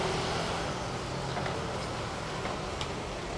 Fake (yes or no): no